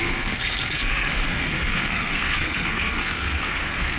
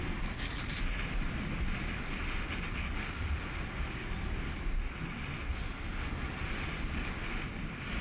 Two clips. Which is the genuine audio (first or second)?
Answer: second